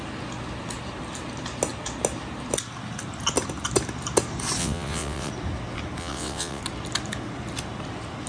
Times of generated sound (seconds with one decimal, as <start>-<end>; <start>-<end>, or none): 4.6-5.3; 6.0-6.6